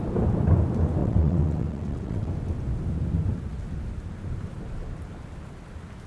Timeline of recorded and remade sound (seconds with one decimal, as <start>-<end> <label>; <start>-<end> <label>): 0.0-1.0 recorded; 1.0-2.3 remade; 2.3-6.1 recorded